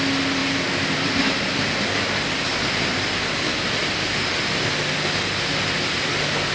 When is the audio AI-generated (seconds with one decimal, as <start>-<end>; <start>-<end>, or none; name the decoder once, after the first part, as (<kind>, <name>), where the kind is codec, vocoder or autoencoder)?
none